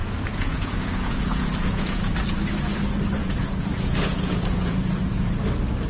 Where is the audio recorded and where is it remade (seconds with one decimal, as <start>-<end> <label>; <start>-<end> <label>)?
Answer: 0.0-2.1 remade; 2.1-3.2 recorded; 3.2-5.0 remade; 5.0-5.9 recorded

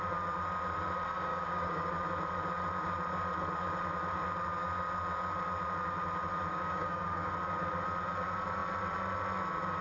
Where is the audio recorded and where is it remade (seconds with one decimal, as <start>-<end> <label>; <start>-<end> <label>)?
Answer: 0.0-1.3 recorded; 1.3-1.9 remade; 1.9-6.5 recorded; 6.5-7.3 remade; 7.3-9.8 recorded

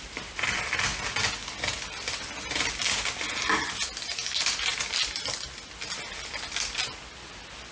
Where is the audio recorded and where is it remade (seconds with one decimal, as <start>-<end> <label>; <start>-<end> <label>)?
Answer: 0.0-7.7 recorded

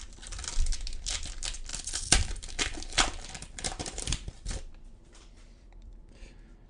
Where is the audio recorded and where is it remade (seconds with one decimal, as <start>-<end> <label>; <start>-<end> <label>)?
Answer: 0.0-1.7 recorded; 1.7-5.7 remade; 5.7-6.7 recorded

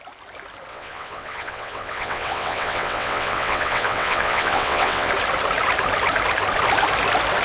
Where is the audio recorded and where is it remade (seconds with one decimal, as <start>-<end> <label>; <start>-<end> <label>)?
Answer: 0.0-0.7 recorded; 0.7-5.1 remade; 5.1-7.4 recorded

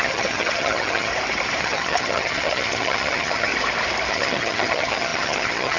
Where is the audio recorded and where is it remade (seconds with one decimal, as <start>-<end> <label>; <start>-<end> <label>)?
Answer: 0.0-1.1 remade; 1.1-1.6 recorded; 1.6-3.5 remade; 3.5-4.1 recorded; 4.1-5.8 remade